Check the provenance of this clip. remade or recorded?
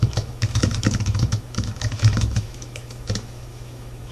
remade